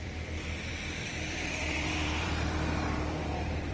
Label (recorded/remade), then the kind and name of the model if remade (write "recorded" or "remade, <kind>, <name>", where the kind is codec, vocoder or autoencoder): remade, vocoder, BigVGAN v2